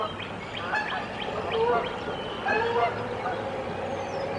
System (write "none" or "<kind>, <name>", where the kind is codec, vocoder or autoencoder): none